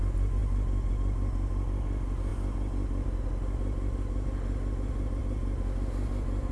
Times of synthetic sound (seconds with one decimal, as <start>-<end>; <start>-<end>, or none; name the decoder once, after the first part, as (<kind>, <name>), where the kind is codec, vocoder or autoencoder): none